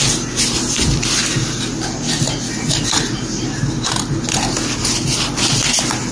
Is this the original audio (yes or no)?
yes